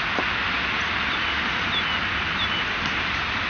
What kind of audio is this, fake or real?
real